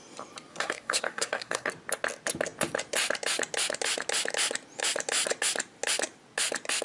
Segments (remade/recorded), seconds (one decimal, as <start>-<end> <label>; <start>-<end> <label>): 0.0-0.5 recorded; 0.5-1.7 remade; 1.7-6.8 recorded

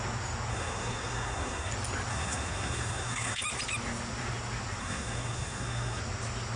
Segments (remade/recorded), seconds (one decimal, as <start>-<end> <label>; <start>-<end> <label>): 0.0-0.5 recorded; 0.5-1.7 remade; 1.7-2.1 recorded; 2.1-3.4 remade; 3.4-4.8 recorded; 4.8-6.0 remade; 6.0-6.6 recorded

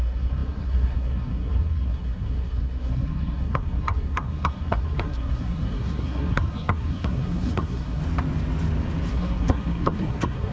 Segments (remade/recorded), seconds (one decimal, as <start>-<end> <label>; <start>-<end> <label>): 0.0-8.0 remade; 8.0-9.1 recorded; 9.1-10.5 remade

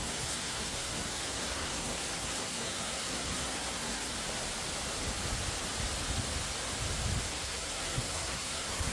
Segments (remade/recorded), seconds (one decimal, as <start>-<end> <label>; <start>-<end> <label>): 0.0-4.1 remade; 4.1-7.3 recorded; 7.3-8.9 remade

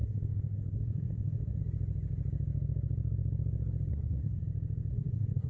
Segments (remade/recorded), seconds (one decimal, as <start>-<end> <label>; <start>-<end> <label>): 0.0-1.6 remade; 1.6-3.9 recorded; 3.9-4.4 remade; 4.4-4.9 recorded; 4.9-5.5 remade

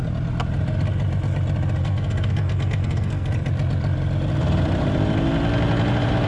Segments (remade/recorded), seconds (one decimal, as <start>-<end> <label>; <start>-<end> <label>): 0.0-1.8 recorded; 1.8-3.3 remade; 3.3-6.3 recorded

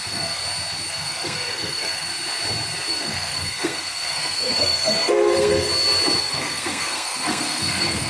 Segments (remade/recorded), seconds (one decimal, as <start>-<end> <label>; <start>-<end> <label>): 0.0-0.4 remade; 0.4-0.9 recorded; 0.9-2.1 remade; 2.1-2.9 recorded; 2.9-5.7 remade; 5.7-6.2 recorded; 6.2-8.1 remade